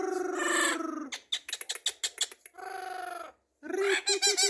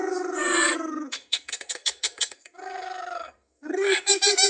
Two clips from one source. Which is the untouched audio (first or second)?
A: first